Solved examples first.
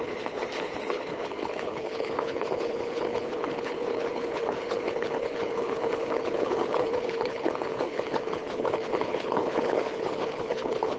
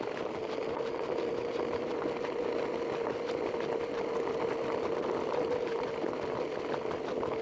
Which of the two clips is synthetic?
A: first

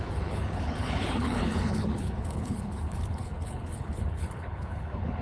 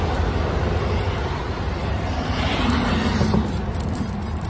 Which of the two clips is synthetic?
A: first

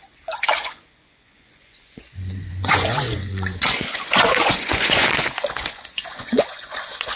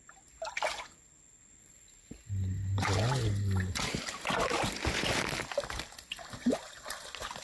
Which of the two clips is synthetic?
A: first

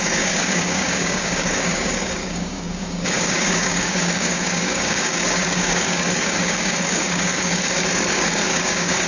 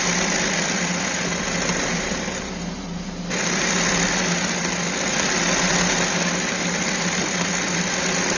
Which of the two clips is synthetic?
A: first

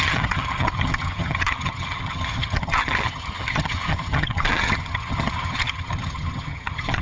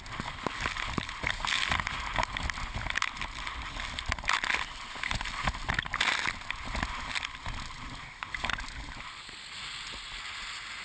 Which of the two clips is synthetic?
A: first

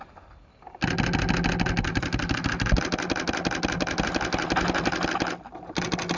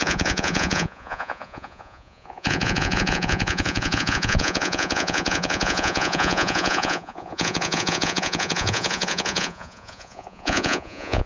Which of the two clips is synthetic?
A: second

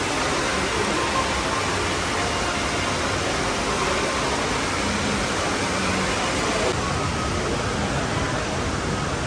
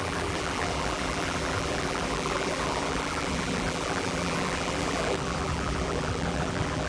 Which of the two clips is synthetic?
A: second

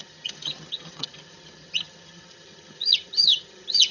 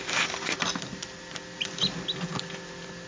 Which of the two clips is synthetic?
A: first